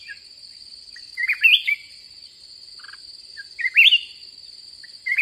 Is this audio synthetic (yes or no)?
no